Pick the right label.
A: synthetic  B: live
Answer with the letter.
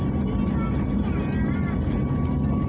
B